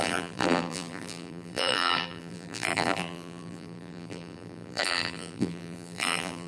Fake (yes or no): yes